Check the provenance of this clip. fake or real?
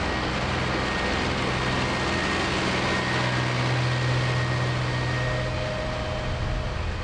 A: real